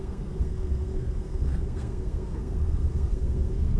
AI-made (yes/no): yes